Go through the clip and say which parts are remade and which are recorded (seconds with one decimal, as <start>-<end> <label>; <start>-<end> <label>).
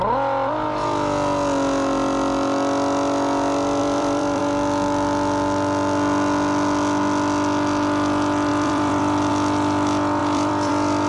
0.0-3.8 recorded; 3.8-4.4 remade; 4.4-8.5 recorded; 8.5-9.3 remade; 9.3-10.2 recorded; 10.2-10.7 remade; 10.7-11.1 recorded